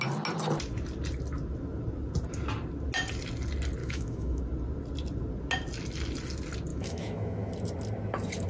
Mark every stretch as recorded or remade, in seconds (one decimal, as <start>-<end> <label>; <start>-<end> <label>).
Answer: 0.0-3.8 recorded; 3.8-4.4 remade; 4.4-6.7 recorded; 6.7-7.5 remade; 7.5-8.5 recorded